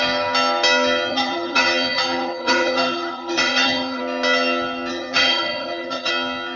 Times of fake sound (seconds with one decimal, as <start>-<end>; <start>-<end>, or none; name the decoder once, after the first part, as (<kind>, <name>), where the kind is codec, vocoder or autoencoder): 1.1-4.0 (vocoder, HiFi-GAN); 4.9-6.1